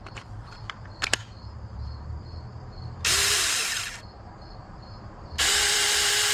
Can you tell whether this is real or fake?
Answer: fake